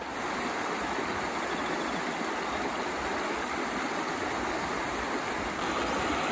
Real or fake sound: real